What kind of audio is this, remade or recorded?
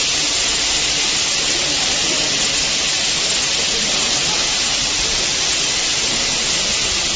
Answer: recorded